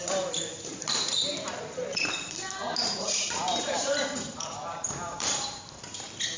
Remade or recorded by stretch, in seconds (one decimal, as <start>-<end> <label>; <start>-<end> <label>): 0.0-0.7 recorded; 0.7-1.3 remade; 1.3-1.8 recorded; 1.8-5.6 remade; 5.6-6.4 recorded